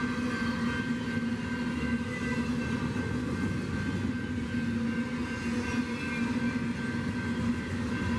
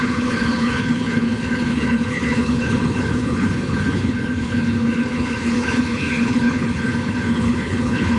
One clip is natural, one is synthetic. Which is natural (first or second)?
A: first